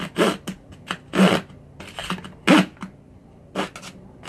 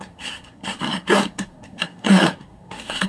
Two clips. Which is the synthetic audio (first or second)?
second